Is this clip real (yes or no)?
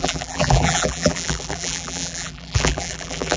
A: no